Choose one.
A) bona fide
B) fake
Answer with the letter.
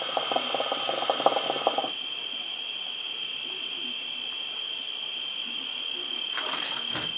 B